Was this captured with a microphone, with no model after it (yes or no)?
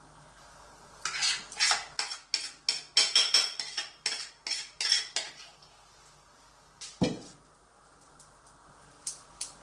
yes